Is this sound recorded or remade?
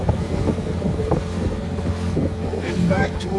remade